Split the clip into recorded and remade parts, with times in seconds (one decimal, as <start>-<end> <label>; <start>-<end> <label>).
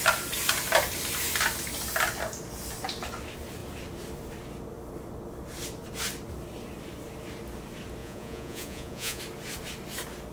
0.0-8.0 recorded; 8.0-9.2 remade; 9.2-10.3 recorded